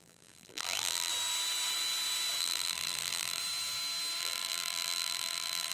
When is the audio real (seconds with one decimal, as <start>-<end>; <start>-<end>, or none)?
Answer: 1.1-2.4; 3.4-4.2